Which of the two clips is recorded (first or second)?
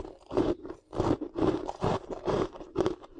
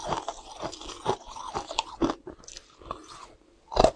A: second